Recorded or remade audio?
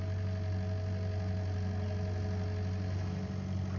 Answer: recorded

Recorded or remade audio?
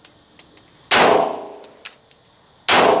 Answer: recorded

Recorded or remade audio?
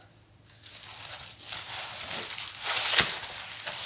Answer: recorded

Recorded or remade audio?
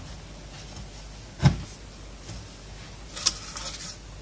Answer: recorded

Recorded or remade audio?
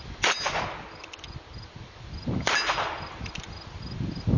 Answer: recorded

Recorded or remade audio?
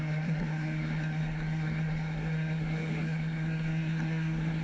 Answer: remade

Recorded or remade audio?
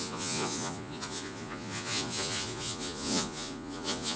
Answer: remade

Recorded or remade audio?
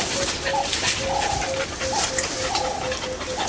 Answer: recorded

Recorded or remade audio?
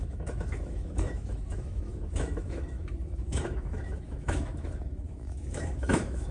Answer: remade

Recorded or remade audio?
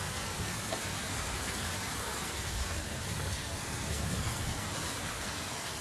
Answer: remade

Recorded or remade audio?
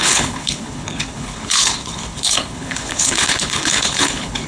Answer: remade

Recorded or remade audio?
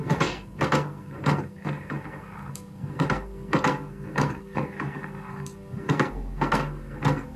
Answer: remade